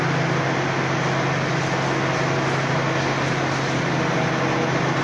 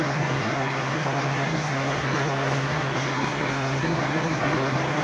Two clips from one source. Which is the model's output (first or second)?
second